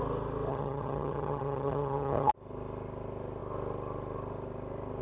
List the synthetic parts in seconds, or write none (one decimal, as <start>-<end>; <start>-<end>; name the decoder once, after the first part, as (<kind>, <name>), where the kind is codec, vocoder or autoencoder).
0.5-2.3 (vocoder, HiFi-GAN)